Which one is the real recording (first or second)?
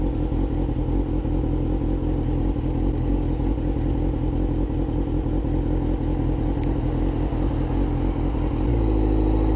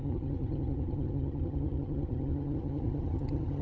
first